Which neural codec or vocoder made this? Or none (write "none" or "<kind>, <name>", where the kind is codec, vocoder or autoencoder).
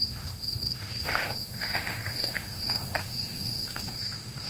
autoencoder, DAC-VAE